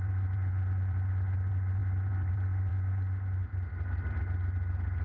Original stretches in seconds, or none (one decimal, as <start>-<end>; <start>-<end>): 0.0-5.0